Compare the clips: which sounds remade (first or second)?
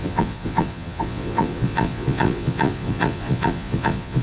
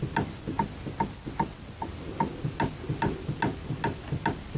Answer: first